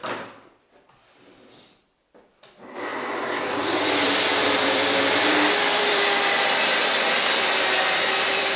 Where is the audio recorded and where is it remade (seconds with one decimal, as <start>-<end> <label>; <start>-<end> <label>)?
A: 0.0-8.6 remade